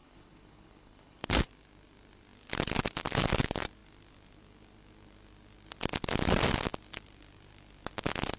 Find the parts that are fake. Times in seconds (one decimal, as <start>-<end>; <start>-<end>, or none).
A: 0.0-1.5